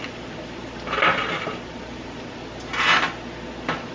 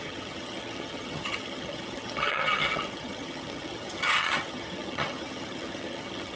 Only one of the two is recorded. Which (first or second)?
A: first